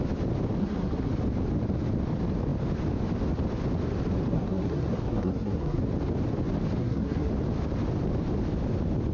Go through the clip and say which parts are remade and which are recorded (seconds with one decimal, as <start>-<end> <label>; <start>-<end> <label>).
0.0-0.6 recorded; 0.6-1.1 remade; 1.1-4.3 recorded; 4.3-5.8 remade; 5.8-6.8 recorded; 6.8-7.3 remade; 7.3-9.1 recorded